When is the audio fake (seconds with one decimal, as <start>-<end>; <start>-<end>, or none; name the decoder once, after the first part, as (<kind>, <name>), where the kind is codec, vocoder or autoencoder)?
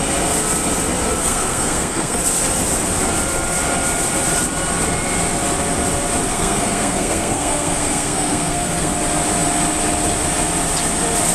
1.2-2.2 (codec, SNAC); 6.3-8.9